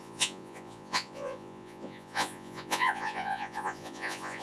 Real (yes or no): no